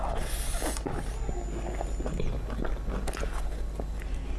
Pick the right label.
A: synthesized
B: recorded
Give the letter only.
B